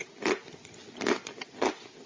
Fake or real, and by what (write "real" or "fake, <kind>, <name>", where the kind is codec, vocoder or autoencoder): real